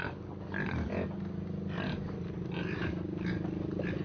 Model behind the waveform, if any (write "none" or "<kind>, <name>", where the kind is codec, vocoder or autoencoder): none